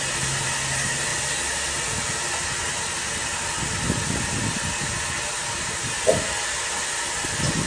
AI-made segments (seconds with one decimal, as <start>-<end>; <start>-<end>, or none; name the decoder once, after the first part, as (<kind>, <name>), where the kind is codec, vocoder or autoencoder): none